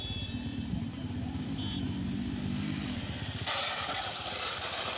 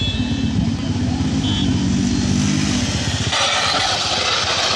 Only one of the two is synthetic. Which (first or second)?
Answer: first